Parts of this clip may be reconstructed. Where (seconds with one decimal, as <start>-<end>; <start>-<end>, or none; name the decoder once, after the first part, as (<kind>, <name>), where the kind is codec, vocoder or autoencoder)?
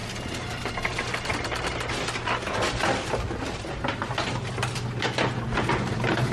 0.0-6.3 (vocoder, BigVGAN v2)